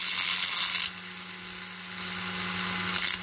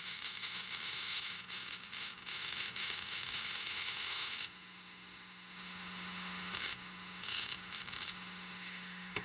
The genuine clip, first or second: first